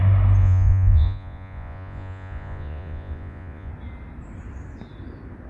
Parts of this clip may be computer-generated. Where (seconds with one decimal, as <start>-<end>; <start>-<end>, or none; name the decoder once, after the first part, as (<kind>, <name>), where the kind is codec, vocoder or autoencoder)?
0.4-3.7 (vocoder, Vocos)